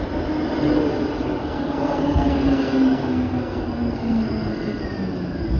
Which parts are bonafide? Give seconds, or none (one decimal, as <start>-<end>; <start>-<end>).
0.0-1.4; 4.8-5.6

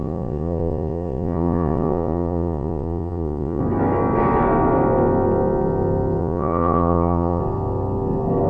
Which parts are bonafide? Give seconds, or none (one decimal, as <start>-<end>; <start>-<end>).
3.6-6.2; 7.4-8.5

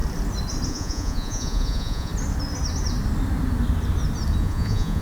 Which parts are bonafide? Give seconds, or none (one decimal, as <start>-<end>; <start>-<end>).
0.0-0.7; 2.1-4.4